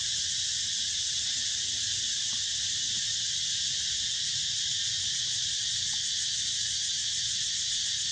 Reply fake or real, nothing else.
real